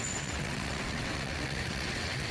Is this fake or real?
fake